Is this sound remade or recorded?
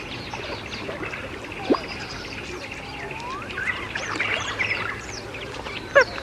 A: recorded